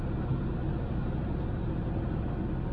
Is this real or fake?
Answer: real